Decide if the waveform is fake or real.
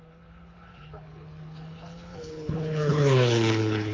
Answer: fake